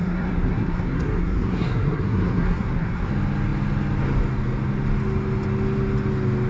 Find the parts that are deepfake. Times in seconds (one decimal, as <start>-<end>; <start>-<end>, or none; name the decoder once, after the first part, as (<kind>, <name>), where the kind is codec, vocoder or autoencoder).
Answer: 0.0-3.1 (codec, SNAC)